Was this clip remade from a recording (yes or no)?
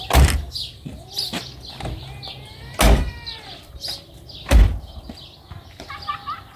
no